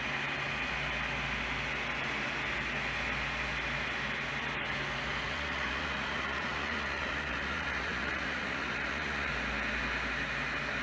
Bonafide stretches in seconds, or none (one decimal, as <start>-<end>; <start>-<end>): 0.0-5.3; 9.3-10.8